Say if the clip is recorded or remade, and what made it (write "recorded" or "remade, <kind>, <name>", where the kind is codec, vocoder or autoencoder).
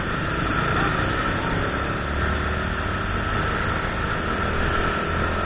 recorded